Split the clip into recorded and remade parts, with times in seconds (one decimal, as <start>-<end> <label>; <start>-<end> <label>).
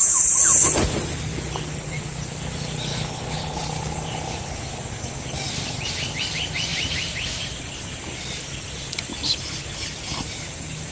0.0-2.9 recorded; 2.9-3.6 remade; 3.6-10.9 recorded